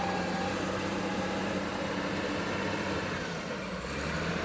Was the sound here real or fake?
fake